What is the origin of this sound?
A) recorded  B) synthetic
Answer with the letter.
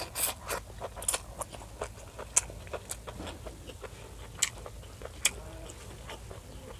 A